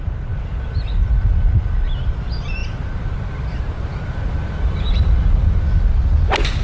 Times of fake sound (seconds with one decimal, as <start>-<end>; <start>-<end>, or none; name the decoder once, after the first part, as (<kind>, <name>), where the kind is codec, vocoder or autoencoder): none